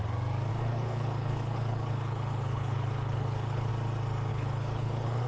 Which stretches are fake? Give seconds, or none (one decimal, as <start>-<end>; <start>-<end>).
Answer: 0.5-3.7; 4.3-5.3